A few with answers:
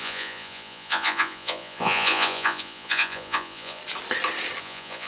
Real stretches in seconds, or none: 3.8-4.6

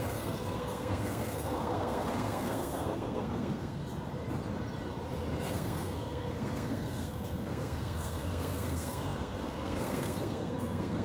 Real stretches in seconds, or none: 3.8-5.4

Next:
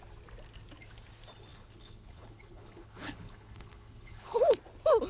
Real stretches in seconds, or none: 0.0-1.5; 4.6-5.1

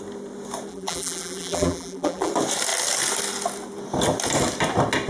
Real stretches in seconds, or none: 0.0-0.7; 2.3-5.1

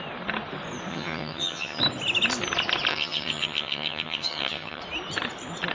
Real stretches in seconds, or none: 0.0-0.9; 1.8-2.9; 4.8-5.7

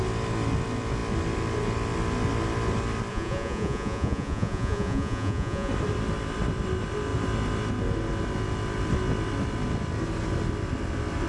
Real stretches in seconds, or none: 0.0-3.1; 5.7-11.3